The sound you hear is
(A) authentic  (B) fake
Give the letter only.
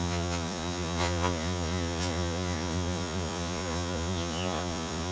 B